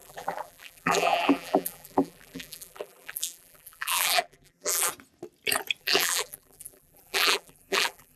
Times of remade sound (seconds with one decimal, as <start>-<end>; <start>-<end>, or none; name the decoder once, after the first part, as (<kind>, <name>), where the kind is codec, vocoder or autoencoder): 0.0-4.9 (vocoder, BigVGAN v2); 5.8-8.2